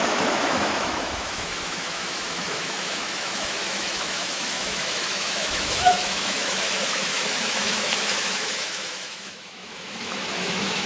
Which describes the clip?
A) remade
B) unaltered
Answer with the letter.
A